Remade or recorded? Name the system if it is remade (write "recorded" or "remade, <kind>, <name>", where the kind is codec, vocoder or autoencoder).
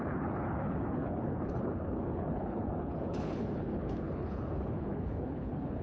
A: remade, codec, HILCodec